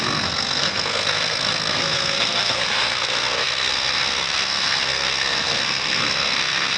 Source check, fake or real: fake